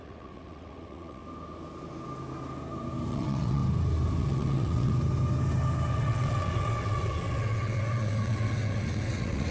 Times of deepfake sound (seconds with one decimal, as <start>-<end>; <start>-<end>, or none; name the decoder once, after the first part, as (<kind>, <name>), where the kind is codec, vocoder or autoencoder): 0.0-1.2 (vocoder, WaveNeXt); 3.1-3.6; 4.2-4.9; 5.9-9.5